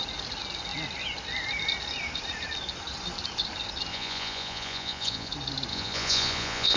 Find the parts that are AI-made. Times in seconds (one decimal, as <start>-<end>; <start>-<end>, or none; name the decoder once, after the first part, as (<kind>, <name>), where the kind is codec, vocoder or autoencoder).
3.9-5.3 (vocoder, Vocos); 5.7-6.8